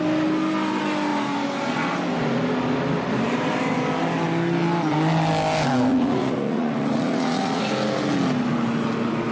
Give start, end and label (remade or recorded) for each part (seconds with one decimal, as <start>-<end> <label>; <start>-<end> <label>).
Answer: 0.0-5.9 recorded; 5.9-7.6 remade; 7.6-9.3 recorded